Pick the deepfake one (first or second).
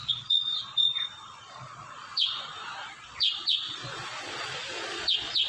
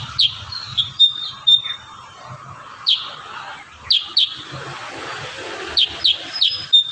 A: first